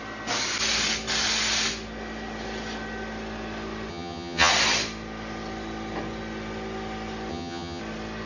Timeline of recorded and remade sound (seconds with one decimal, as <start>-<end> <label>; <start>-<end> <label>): 0.0-3.9 recorded; 3.9-4.5 remade; 4.5-7.3 recorded; 7.3-7.8 remade; 7.8-8.3 recorded